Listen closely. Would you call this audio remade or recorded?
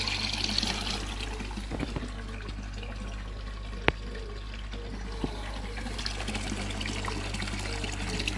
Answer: recorded